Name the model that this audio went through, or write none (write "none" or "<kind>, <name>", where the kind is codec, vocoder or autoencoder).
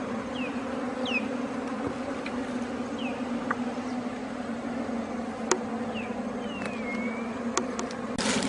none